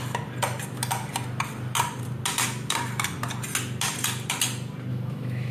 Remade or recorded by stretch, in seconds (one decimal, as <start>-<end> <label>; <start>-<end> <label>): 0.0-4.9 recorded; 4.9-5.5 remade